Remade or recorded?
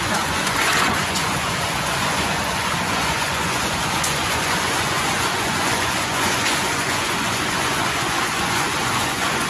remade